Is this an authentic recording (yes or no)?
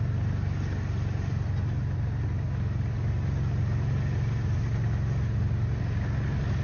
yes